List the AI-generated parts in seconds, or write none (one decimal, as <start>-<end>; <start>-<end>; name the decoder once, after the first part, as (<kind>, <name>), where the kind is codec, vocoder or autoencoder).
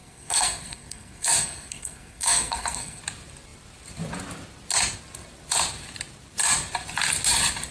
0.0-3.0 (codec, SNAC)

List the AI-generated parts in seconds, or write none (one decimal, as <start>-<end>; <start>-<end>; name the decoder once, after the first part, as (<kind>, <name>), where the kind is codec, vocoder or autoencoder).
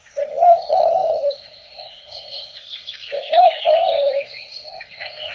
0.0-5.3 (codec, SNAC)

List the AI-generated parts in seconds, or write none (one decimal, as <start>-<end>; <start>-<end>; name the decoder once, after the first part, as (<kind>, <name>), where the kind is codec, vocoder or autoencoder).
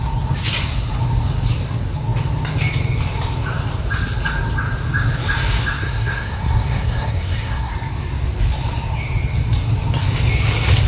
5.8-7.7 (codec, SNAC)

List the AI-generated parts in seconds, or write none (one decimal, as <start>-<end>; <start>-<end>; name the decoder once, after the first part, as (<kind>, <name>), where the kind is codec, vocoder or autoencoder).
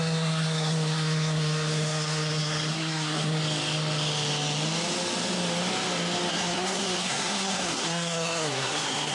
0.0-3.4 (codec, SNAC); 6.3-9.1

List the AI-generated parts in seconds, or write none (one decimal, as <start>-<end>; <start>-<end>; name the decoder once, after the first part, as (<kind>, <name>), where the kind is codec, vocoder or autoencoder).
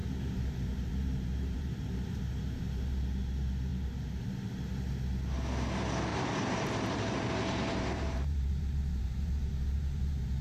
0.0-2.2 (vocoder, BigVGAN v2); 3.7-4.2; 6.1-10.4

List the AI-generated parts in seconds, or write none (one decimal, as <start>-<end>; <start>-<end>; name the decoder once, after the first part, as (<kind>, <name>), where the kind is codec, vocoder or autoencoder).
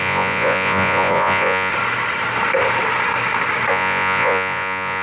0.0-1.7 (vocoder, Vocos); 3.7-5.0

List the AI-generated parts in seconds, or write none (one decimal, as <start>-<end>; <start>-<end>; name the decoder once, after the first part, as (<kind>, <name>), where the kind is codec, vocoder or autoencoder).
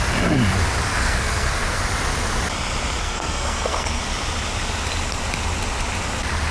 0.9-1.8 (codec, SNAC); 3.0-4.0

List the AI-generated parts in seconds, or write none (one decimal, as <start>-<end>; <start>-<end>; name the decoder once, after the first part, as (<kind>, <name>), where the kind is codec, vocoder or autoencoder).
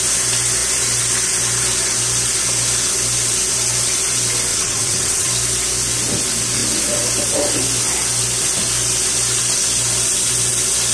4.5-5.3 (vocoder, WaveNeXt)